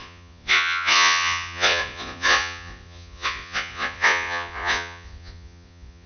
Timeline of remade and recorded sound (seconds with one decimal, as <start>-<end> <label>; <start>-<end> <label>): 0.0-6.1 remade

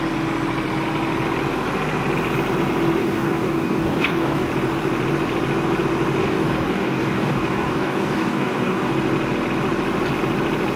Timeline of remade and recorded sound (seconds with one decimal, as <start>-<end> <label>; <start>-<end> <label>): 0.0-3.0 recorded; 3.0-4.5 remade; 4.5-6.2 recorded; 6.2-8.9 remade; 8.9-10.8 recorded

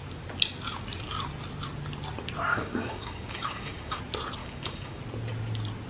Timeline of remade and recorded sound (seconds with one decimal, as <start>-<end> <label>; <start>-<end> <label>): 0.0-2.5 recorded; 2.5-4.0 remade; 4.0-4.4 recorded; 4.4-5.0 remade; 5.0-5.9 recorded

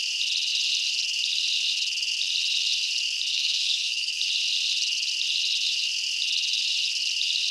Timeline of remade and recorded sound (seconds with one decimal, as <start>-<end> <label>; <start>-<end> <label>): 0.0-3.3 recorded; 3.3-4.2 remade; 4.2-7.5 recorded